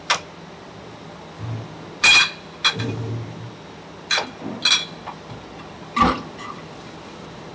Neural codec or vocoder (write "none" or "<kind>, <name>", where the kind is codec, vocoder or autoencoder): none